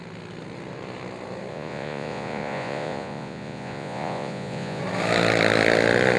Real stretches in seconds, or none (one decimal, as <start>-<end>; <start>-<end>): 0.0-1.5; 4.8-6.2

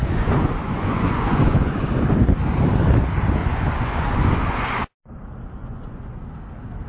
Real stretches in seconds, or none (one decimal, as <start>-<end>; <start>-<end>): 1.8-3.4; 4.8-5.6; 6.2-6.9

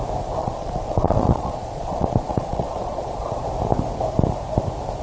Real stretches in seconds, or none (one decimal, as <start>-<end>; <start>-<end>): 0.0-0.4; 3.4-5.0

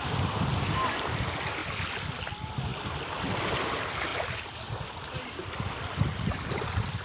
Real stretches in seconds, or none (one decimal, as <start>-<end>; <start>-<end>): 0.0-7.0